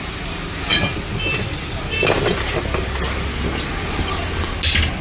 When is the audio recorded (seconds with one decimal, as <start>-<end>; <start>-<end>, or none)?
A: 0.0-5.0